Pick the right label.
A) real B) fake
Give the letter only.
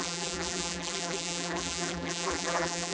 B